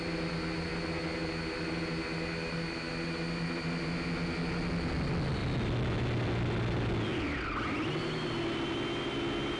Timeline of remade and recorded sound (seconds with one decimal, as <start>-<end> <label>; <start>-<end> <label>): 0.0-9.6 recorded